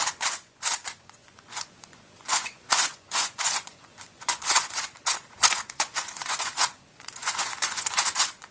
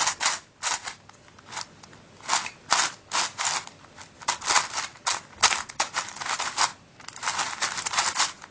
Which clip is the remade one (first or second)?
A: first